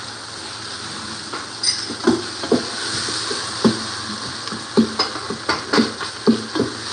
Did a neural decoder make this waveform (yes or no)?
no